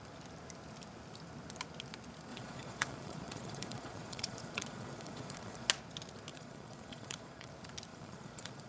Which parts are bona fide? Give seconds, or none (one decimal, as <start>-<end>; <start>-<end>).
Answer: 0.0-2.3; 5.7-6.3; 7.5-7.9